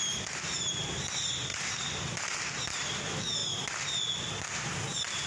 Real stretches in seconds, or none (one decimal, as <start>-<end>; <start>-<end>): 0.0-1.5; 2.0-5.3